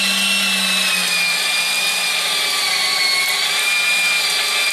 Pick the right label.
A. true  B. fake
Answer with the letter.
A